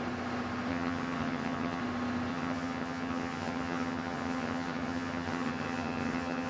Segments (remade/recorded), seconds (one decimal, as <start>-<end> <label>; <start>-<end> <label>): 0.0-0.7 recorded; 0.7-1.8 remade; 1.8-2.3 recorded; 2.3-6.5 remade